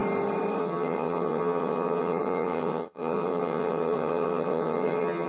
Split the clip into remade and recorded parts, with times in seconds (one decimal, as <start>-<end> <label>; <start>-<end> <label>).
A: 0.0-0.6 recorded; 0.6-5.3 remade